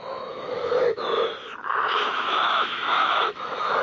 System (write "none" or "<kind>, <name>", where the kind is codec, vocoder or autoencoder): autoencoder, DAC-VAE